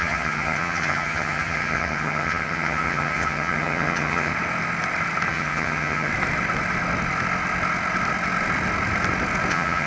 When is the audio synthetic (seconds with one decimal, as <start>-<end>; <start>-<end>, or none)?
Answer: 0.0-4.3; 5.3-6.1; 9.5-9.9